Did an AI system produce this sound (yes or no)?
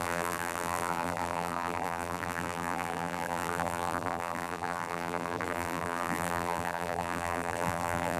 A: yes